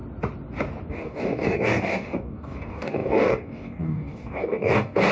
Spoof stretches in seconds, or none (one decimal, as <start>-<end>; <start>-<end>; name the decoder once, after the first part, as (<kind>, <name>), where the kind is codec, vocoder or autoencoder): 0.9-5.1 (codec, DAC)